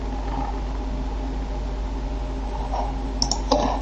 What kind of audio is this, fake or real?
real